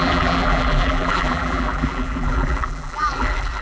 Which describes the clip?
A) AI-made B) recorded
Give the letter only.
A